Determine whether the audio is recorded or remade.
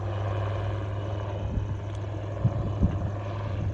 recorded